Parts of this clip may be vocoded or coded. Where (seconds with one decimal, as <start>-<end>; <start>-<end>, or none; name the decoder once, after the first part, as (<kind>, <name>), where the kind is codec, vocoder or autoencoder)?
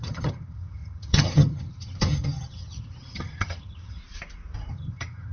0.0-4.0 (vocoder, HiFi-GAN); 4.7-5.3